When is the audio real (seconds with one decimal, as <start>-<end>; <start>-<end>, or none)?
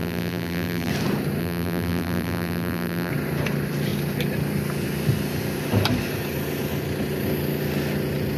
0.9-1.4; 3.1-8.4